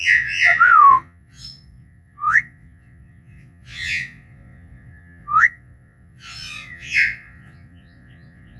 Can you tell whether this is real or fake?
fake